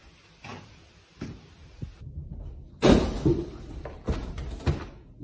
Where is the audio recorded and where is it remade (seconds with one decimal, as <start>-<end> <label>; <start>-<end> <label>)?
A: 0.0-5.2 recorded